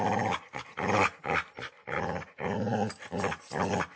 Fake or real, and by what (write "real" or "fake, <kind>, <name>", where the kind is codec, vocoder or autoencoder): real